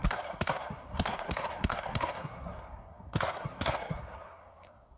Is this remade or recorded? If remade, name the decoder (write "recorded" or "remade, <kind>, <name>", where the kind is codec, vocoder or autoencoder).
remade, codec, SNAC